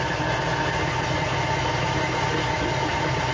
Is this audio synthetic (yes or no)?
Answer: no